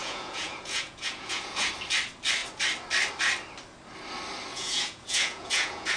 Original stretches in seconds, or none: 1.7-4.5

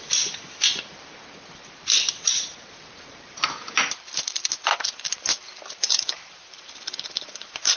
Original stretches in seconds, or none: 1.1-5.8

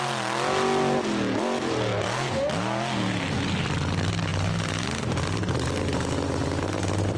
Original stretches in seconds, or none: 0.0-7.2